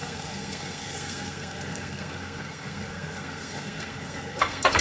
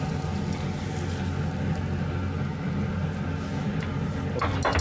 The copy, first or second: first